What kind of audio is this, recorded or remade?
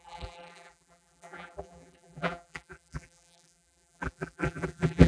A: remade